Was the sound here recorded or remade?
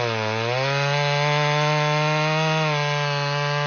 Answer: recorded